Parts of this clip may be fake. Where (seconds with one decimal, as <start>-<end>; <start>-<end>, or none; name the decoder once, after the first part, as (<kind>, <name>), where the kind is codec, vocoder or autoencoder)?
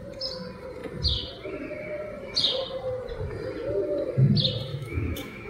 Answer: 4.7-5.5 (autoencoder, DAC-VAE)